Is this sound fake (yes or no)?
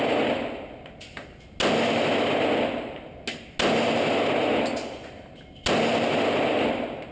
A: no